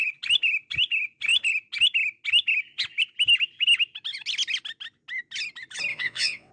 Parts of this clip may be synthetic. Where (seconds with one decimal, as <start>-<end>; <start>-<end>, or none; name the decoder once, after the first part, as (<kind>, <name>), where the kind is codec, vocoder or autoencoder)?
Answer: 5.9-6.5 (vocoder, WaveNeXt)